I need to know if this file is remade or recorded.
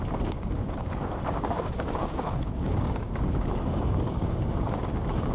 remade